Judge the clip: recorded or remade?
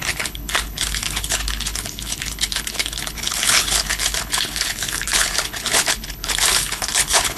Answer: remade